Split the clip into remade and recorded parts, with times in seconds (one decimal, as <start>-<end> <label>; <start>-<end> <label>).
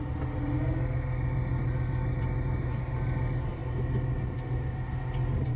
0.0-5.6 recorded